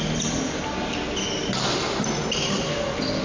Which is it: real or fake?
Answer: real